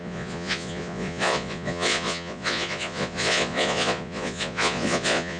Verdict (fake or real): fake